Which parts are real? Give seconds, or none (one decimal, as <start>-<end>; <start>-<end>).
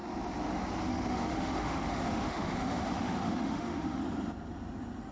0.0-0.9; 4.0-5.1